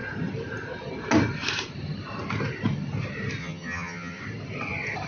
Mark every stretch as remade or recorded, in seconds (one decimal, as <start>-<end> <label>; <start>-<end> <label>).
0.0-3.4 recorded; 3.4-4.2 remade; 4.2-5.1 recorded